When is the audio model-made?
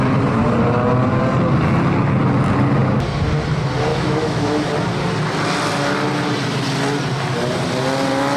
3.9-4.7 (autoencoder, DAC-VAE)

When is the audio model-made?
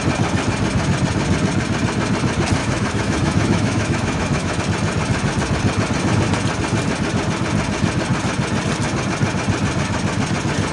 2.6-4.6 (autoencoder, DAC-VAE)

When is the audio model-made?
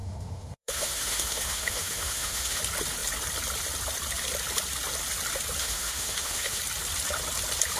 0.0-2.6 (autoencoder, DAC-VAE); 5.6-6.6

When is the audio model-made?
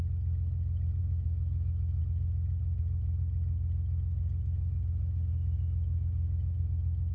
1.0-2.0 (autoencoder, DAC-VAE); 5.3-6.6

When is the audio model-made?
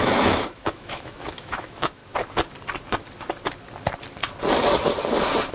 0.0-2.0 (autoencoder, DAC-VAE)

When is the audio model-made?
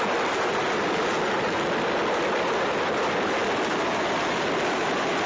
none